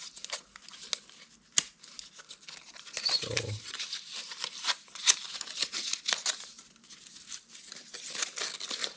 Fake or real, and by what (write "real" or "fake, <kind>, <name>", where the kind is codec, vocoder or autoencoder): real